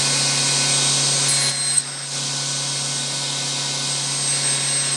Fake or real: real